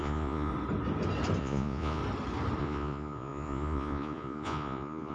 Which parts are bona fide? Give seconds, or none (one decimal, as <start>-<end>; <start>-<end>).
0.5-1.4; 2.0-2.6

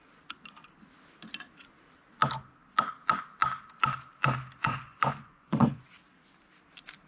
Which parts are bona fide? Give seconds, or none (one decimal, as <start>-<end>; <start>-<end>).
0.0-4.6; 5.8-7.1

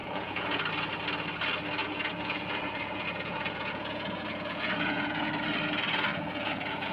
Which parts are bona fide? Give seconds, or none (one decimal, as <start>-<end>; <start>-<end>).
0.6-1.8; 5.3-6.1